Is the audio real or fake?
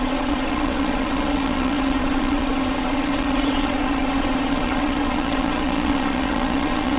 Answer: fake